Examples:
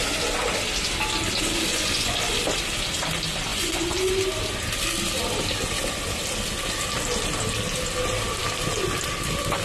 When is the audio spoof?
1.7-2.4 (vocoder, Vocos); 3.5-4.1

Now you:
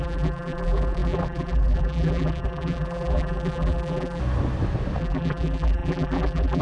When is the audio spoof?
0.0-4.2 (vocoder, BigVGAN v2); 5.0-6.6

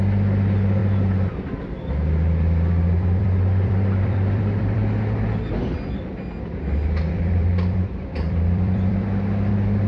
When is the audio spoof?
0.0-0.8 (vocoder, BigVGAN v2); 1.7-4.8; 7.1-9.9

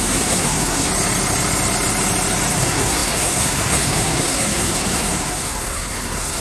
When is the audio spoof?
0.0-0.9 (codec, SNAC); 2.5-6.4

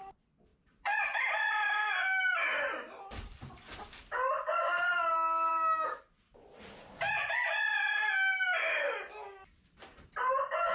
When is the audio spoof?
5.5-6.0 (autoencoder, DAC-VAE)